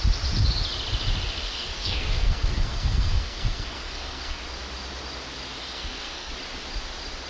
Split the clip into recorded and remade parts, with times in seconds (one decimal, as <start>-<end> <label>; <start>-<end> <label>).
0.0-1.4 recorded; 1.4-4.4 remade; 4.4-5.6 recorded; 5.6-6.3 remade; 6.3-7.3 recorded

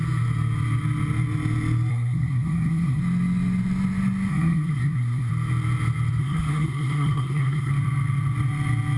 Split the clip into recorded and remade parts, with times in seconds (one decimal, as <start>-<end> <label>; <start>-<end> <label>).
0.0-1.9 recorded; 1.9-3.0 remade; 3.0-4.3 recorded; 4.3-5.3 remade; 5.3-6.2 recorded; 6.2-7.7 remade; 7.7-9.0 recorded

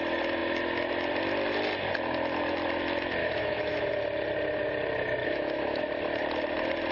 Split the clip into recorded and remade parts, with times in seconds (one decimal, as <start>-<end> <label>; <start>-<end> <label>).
0.0-3.2 recorded; 3.2-3.9 remade; 3.9-5.2 recorded; 5.2-5.8 remade; 5.8-6.9 recorded

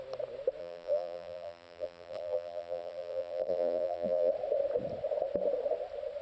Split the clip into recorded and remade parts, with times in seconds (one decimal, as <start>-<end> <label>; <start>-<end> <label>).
0.0-0.6 recorded; 0.6-4.3 remade; 4.3-6.2 recorded